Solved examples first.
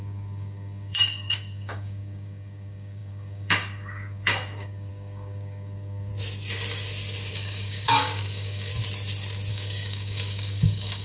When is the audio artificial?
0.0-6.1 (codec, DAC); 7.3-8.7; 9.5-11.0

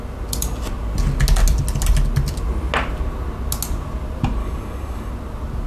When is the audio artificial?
4.4-5.1 (codec, DAC)

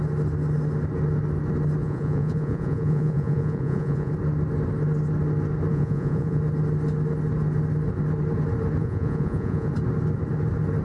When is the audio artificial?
1.8-4.1 (vocoder, Vocos); 5.7-6.4; 8.8-9.7

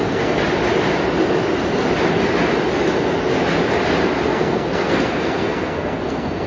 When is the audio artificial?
0.0-0.4 (codec, SNAC); 4.3-6.5

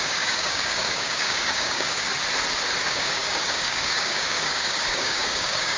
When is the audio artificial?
0.0-2.1 (codec, DAC); 2.8-5.8

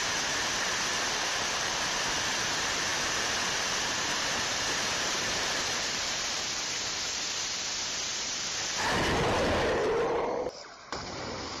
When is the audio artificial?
1.6-7.1 (vocoder, BigVGAN v2); 11.0-11.6

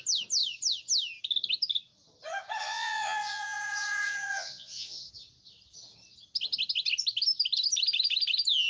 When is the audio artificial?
2.6-5.1 (vocoder, Vocos)